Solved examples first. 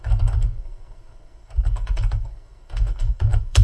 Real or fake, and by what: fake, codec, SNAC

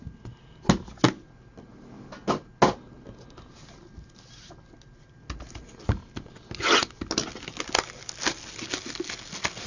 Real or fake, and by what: real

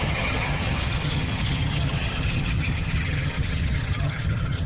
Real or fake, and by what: fake, vocoder, HiFi-GAN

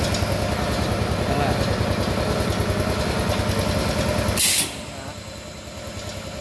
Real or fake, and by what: real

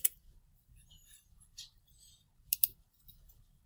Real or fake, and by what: fake, vocoder, BigVGAN v2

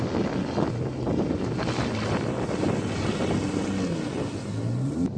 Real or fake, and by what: real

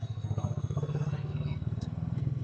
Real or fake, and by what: fake, codec, SNAC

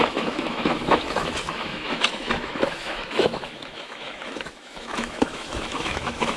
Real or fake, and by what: fake, autoencoder, DAC-VAE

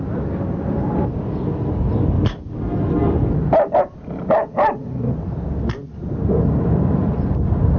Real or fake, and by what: real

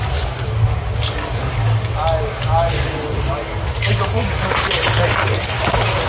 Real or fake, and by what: real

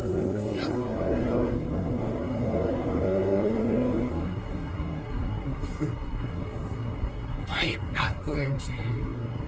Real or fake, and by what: fake, codec, SNAC